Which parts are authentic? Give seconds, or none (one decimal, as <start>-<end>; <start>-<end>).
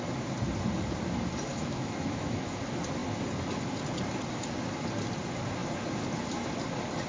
0.0-1.5; 2.6-7.1